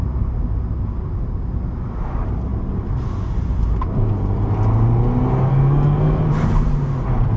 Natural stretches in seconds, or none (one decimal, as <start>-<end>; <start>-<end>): 0.0-5.5; 6.2-7.4

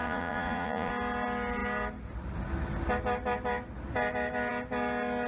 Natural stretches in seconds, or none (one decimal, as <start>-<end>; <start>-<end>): 0.9-5.3

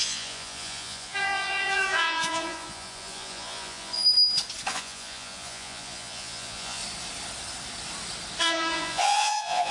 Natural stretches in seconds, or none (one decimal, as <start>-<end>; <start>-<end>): 4.0-4.7; 6.8-8.4

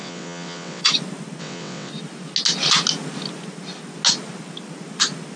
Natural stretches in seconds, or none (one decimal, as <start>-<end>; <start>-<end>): 0.8-1.4; 1.9-5.4

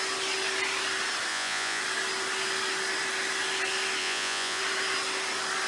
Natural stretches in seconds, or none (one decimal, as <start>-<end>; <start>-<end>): 0.0-1.3; 1.8-4.0; 4.6-5.7